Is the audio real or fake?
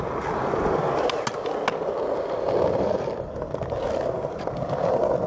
real